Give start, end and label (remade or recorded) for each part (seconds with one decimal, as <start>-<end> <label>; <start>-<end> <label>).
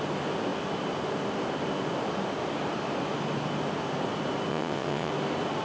0.0-4.5 recorded; 4.5-5.1 remade; 5.1-5.6 recorded